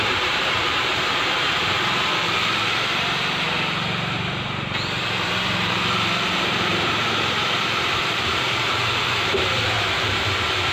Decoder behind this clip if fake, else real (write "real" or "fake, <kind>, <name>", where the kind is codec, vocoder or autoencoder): fake, vocoder, BigVGAN v2